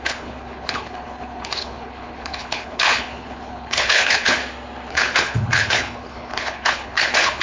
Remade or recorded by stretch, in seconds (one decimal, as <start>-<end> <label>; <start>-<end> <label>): 0.0-4.4 remade; 4.4-4.9 recorded; 4.9-7.4 remade

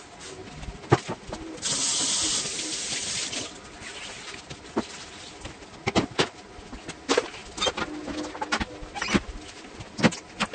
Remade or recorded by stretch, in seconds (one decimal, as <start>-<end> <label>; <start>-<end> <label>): 0.0-10.5 recorded